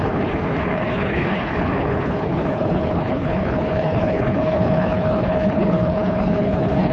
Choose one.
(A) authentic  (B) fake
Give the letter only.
B